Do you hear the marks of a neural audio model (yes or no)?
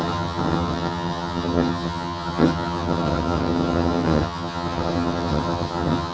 yes